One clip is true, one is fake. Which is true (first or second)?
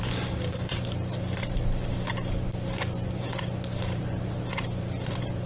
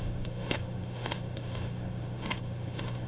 first